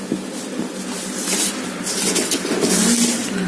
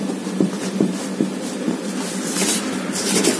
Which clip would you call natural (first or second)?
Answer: first